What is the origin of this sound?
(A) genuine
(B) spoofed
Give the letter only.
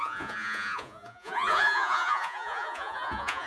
B